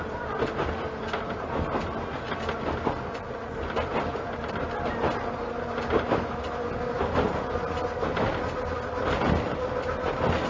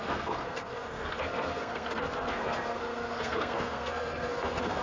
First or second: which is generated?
second